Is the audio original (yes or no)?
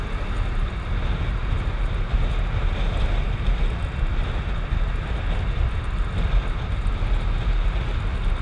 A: yes